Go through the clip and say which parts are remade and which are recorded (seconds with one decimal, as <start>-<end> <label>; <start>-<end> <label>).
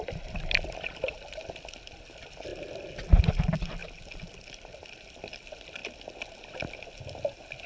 0.0-2.5 remade; 2.5-3.2 recorded; 3.2-5.8 remade; 5.8-7.7 recorded